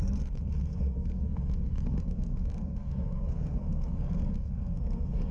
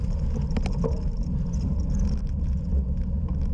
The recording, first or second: second